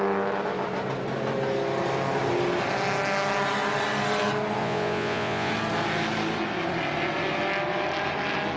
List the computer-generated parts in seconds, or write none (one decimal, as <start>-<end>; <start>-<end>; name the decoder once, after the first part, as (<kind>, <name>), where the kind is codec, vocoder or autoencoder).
4.6-5.5 (vocoder, Vocos)